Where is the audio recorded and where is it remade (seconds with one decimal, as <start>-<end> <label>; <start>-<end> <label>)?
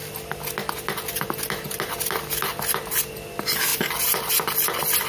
0.0-5.1 recorded